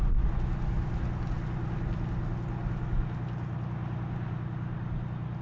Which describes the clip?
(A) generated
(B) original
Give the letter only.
B